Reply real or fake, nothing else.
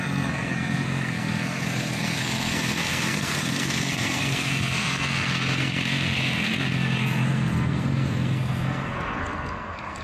fake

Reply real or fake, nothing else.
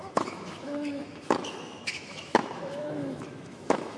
fake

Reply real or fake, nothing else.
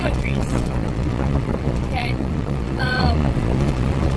fake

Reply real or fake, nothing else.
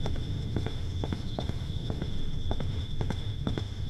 fake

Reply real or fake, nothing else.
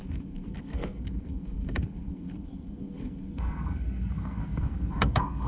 fake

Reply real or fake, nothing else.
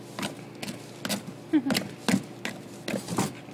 real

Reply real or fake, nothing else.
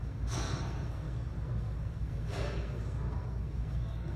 fake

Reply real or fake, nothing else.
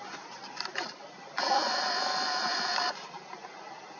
real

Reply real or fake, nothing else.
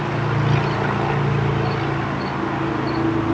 real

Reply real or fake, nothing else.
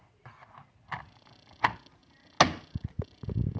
real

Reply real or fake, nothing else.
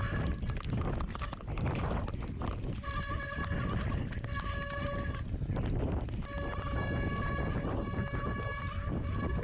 real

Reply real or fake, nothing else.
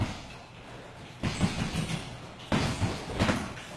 real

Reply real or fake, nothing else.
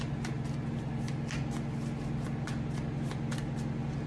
real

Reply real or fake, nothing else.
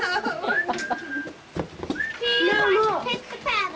real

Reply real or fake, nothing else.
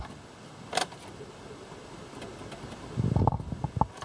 real